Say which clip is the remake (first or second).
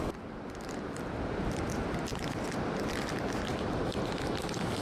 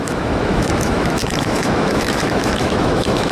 second